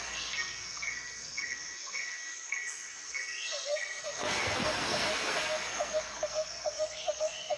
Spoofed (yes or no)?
yes